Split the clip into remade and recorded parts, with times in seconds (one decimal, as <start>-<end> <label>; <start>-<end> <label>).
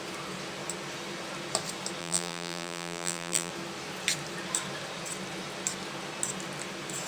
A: 0.0-2.0 recorded; 2.0-3.5 remade; 3.5-7.1 recorded